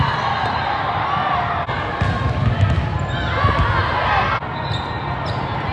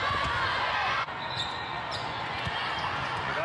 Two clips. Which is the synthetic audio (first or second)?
second